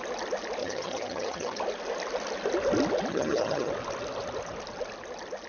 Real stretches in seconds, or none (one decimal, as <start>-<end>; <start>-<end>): 0.0-0.6; 1.6-3.1; 3.7-5.5